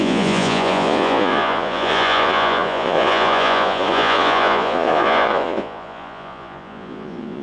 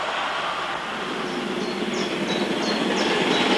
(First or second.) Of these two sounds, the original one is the second